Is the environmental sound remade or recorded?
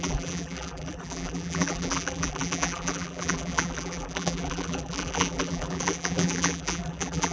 remade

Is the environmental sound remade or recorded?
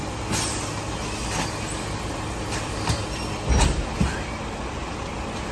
recorded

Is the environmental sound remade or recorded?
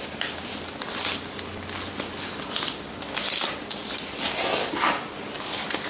recorded